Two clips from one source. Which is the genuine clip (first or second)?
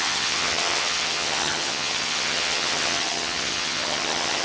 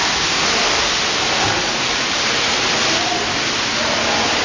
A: second